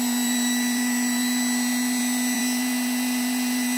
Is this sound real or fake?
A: fake